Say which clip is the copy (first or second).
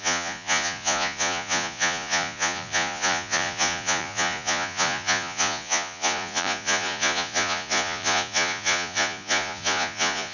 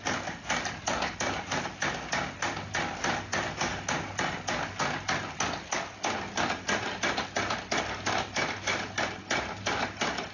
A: first